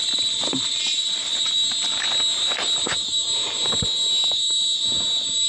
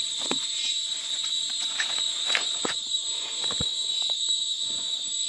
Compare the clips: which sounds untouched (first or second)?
first